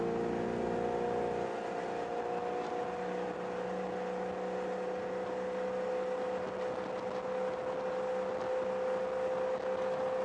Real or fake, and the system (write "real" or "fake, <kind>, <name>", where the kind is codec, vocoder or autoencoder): real